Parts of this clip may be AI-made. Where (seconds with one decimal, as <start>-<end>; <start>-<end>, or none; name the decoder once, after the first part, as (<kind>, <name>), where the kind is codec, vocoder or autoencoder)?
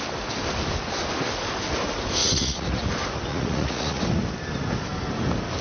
2.2-2.9 (vocoder, Vocos); 3.3-4.0